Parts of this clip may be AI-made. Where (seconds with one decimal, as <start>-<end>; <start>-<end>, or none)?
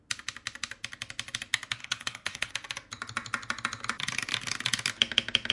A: 1.8-2.5